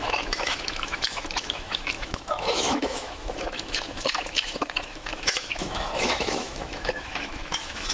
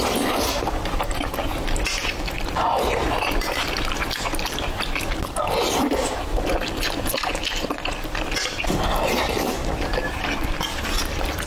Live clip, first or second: second